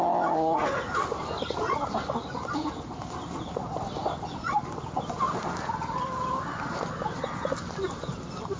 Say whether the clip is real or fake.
real